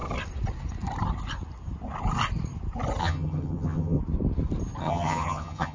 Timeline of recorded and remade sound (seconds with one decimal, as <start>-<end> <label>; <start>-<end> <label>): 0.0-3.0 recorded; 3.0-4.0 remade; 4.0-4.8 recorded; 4.8-5.7 remade